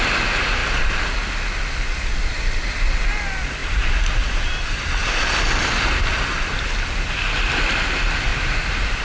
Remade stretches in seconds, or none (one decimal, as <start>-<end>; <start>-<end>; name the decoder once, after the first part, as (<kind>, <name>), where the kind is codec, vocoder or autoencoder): 0.6-1.3 (vocoder, BigVGAN v2); 3.6-4.9; 8.3-9.0